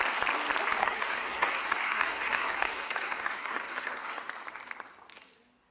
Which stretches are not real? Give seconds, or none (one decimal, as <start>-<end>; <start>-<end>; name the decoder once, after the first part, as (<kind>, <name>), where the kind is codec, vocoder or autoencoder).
0.8-4.2 (codec, SNAC)